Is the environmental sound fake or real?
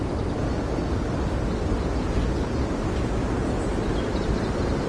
real